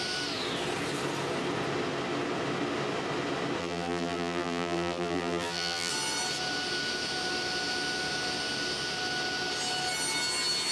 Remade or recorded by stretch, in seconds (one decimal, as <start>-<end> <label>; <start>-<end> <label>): 0.0-3.6 recorded; 3.6-5.9 remade; 5.9-10.7 recorded